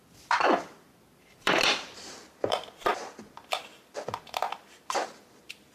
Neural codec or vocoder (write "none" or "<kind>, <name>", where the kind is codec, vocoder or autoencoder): vocoder, BigVGAN v2